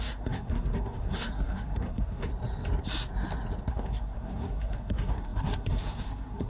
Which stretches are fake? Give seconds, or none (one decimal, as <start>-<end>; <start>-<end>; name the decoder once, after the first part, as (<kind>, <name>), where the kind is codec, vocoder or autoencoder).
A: 0.0-2.3 (codec, SNAC); 3.7-6.5